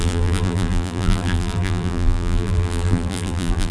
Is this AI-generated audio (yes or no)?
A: yes